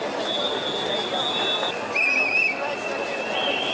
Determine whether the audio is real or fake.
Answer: real